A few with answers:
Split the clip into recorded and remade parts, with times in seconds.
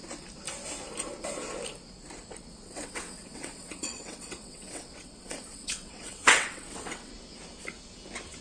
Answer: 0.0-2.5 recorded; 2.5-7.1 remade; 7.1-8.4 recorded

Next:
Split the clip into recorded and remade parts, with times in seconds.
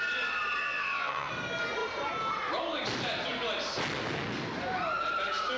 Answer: 0.0-0.6 recorded; 0.6-1.3 remade; 1.3-5.6 recorded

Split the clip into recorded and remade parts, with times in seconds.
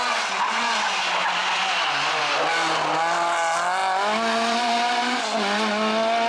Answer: 0.0-0.6 remade; 0.6-6.3 recorded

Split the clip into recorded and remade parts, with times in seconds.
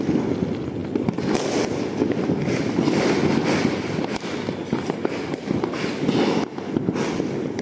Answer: 0.0-7.6 recorded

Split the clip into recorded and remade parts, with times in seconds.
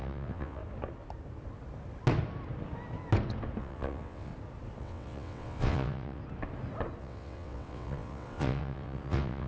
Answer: 0.0-0.6 remade; 0.6-3.6 recorded; 3.6-4.3 remade; 4.3-4.8 recorded; 4.8-6.2 remade; 6.2-7.0 recorded; 7.0-9.5 remade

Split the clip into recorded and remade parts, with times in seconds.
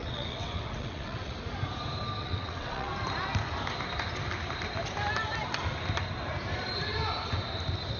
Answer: 0.0-1.4 remade; 1.4-2.2 recorded; 2.2-2.9 remade; 2.9-8.0 recorded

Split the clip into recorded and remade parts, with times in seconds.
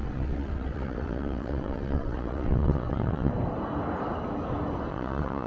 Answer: 0.0-3.3 remade; 3.3-4.9 recorded; 4.9-5.5 remade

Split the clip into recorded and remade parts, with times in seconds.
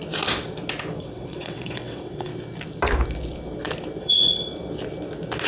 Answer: 0.0-1.0 recorded; 1.0-2.3 remade; 2.3-4.0 recorded; 4.0-4.5 remade; 4.5-5.5 recorded